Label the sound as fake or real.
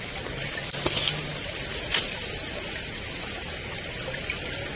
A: real